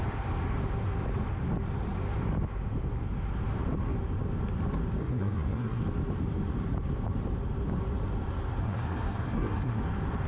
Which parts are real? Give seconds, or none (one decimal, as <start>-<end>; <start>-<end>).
0.0-5.0; 5.8-8.6; 9.8-10.3